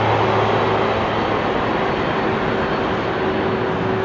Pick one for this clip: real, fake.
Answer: real